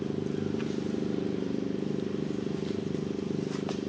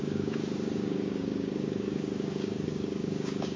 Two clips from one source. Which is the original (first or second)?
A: first